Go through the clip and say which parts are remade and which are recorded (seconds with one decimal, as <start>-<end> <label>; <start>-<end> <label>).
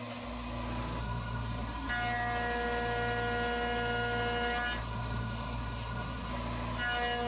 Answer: 0.0-1.0 recorded; 1.0-1.9 remade; 1.9-4.8 recorded; 4.8-6.3 remade; 6.3-7.3 recorded